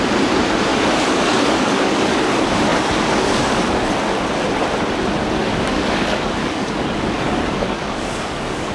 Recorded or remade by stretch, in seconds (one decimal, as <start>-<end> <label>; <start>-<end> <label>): 0.0-0.7 recorded; 0.7-2.2 remade; 2.2-2.7 recorded; 2.7-3.9 remade; 3.9-5.5 recorded; 5.5-8.7 remade